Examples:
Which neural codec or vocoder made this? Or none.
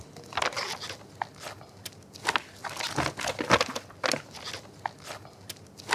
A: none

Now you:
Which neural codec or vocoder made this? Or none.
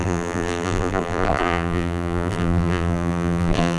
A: vocoder, BigVGAN v2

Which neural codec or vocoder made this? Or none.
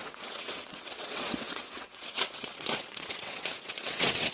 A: vocoder, WaveNeXt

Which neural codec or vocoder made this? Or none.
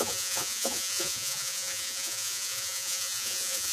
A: vocoder, Vocos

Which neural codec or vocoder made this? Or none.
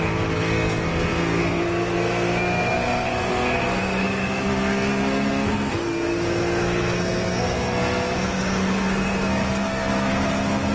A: codec, SNAC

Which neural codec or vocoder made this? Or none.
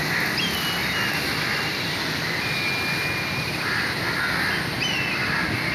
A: none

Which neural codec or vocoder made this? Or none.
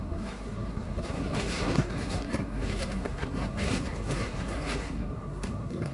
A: codec, SNAC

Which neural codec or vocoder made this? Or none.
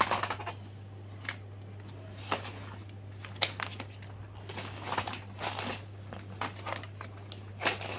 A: none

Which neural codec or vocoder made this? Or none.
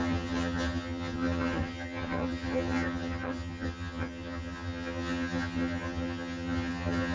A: vocoder, HiFi-GAN